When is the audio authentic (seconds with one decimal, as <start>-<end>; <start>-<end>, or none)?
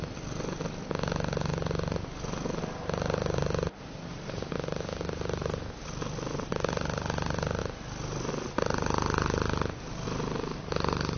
0.0-11.2